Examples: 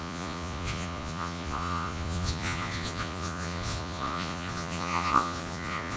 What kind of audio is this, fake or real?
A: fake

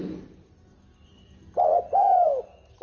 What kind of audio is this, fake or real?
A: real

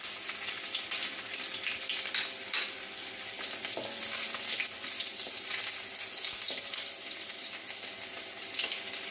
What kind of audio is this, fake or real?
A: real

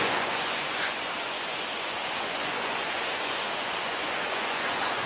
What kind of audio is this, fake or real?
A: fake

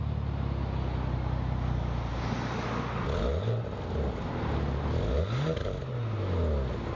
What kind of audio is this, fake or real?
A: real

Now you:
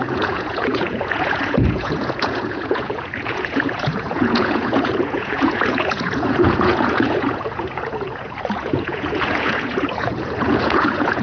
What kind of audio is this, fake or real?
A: fake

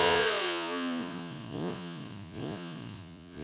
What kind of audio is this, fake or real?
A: fake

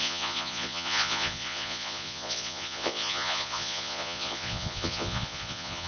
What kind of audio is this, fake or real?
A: fake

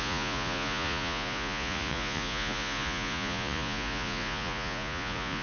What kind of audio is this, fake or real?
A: fake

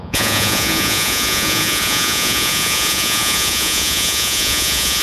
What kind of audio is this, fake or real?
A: fake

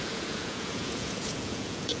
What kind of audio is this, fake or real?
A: fake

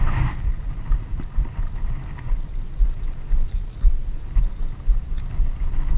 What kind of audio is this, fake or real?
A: real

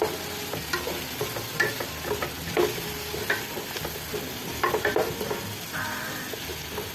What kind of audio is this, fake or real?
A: real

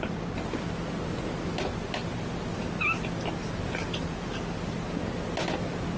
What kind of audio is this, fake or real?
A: real